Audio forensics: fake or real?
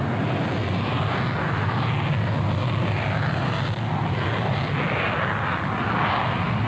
real